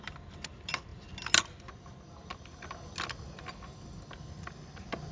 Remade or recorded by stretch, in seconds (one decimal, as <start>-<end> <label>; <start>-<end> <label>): 0.0-5.1 recorded